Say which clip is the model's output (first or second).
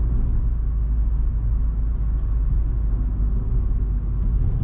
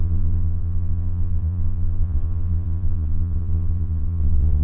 second